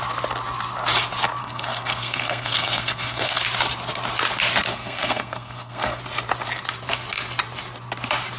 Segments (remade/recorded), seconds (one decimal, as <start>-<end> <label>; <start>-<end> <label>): 0.0-1.4 recorded; 1.4-3.4 remade; 3.4-4.7 recorded; 4.7-6.0 remade; 6.0-8.4 recorded